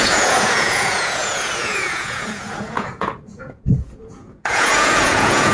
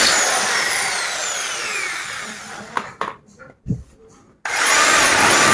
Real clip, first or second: second